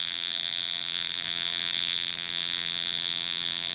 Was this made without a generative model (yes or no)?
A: no